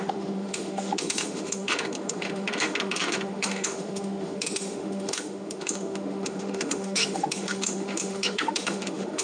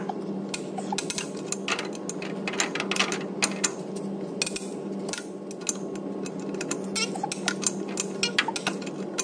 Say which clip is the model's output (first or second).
first